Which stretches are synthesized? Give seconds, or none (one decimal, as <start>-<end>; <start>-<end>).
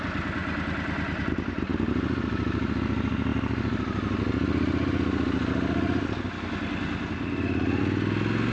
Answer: none